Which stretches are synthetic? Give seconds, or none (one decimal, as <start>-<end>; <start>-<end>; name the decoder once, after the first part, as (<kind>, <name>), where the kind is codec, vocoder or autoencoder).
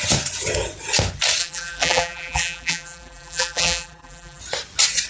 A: 1.4-4.4 (vocoder, BigVGAN v2)